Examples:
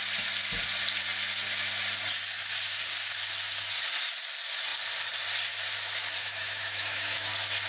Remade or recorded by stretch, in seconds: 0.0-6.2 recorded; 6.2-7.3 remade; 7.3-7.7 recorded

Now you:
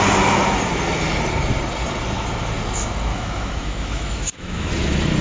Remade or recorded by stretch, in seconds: 0.0-3.1 recorded; 3.1-4.7 remade; 4.7-5.2 recorded

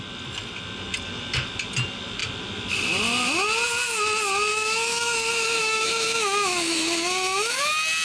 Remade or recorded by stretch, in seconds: 0.0-4.5 recorded; 4.5-7.6 remade; 7.6-8.0 recorded

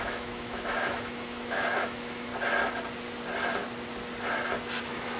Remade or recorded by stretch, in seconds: 0.0-2.3 remade; 2.3-4.8 recorded; 4.8-5.2 remade

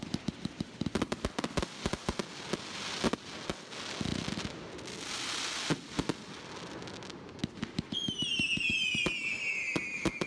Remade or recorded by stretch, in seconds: 0.0-10.3 recorded

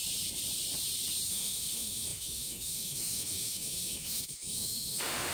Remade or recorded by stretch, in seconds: 0.0-1.3 recorded; 1.3-5.3 remade

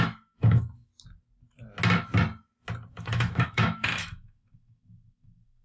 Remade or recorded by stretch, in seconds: 0.0-0.9 remade; 0.9-2.9 recorded; 2.9-5.6 remade

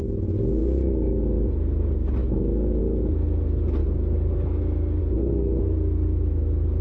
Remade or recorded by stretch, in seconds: 0.0-2.2 recorded; 2.2-2.8 remade; 2.8-6.8 recorded